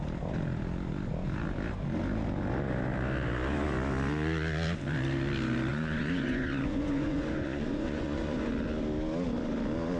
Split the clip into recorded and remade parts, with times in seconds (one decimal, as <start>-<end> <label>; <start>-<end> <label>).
0.0-5.7 recorded; 5.7-8.5 remade; 8.5-10.0 recorded